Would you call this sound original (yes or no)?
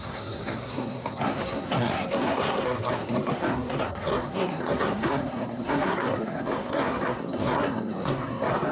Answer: no